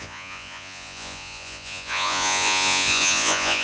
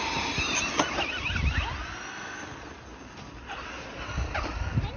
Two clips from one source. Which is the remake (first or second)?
first